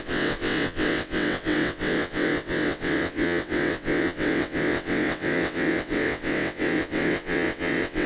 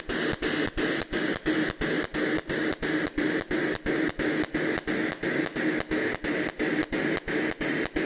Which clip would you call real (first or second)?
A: second